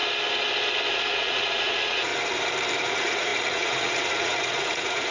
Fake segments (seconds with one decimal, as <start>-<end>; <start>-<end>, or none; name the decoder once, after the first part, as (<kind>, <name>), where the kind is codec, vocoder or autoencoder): 0.9-2.1 (vocoder, Vocos); 2.8-5.1